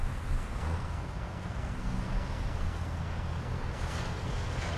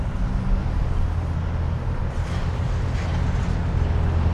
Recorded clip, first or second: second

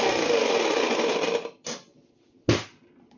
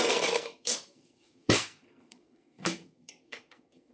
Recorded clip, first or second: first